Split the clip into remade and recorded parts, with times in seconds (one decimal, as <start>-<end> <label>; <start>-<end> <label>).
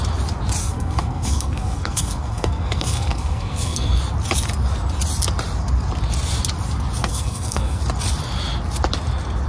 0.0-0.6 recorded; 0.6-4.0 remade; 4.0-7.0 recorded; 7.0-7.8 remade; 7.8-9.5 recorded